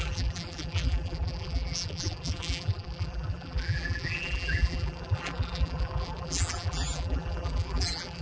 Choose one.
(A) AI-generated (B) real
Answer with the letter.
A